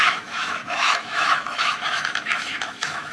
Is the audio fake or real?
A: fake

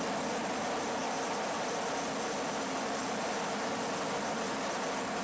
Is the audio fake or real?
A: real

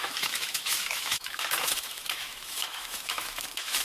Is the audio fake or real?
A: fake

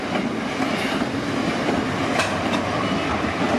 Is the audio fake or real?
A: real